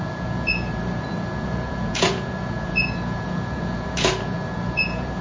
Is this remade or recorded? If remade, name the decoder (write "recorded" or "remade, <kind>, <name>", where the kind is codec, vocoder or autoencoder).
remade, vocoder, Vocos